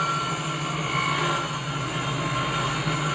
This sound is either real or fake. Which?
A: real